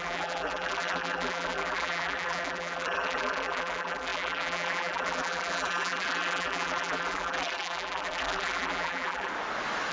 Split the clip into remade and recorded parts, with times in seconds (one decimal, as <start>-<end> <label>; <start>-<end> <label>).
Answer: 0.0-9.3 remade; 9.3-9.9 recorded